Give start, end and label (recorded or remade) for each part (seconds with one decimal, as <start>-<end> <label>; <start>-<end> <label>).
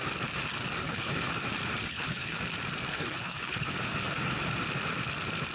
0.0-0.8 recorded; 0.8-1.3 remade; 1.3-1.8 recorded; 1.8-2.4 remade; 2.4-2.9 recorded; 2.9-3.7 remade; 3.7-5.5 recorded